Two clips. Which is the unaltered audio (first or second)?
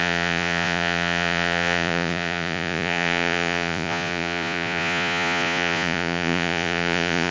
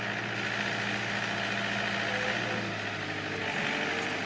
second